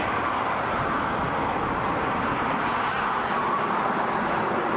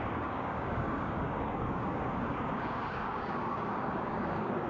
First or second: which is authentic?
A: first